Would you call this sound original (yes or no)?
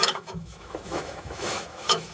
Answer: no